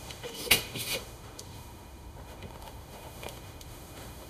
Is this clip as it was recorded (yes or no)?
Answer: no